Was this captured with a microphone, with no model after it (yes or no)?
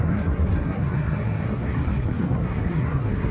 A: no